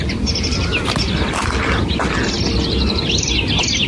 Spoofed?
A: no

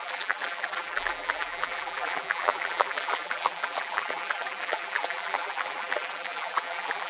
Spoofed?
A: yes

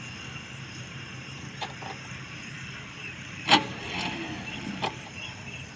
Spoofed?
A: yes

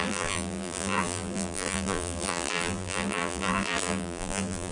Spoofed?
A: yes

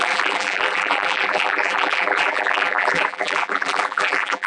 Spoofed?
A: yes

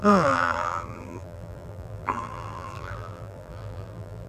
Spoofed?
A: yes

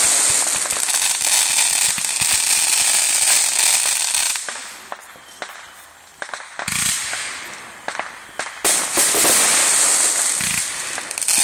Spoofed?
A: no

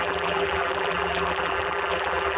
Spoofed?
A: yes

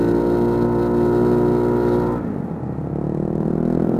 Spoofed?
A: no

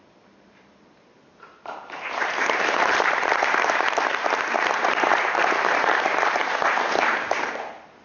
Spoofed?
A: yes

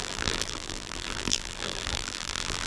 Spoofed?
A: yes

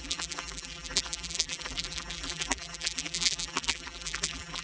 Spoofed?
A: yes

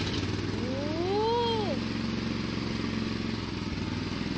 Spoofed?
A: no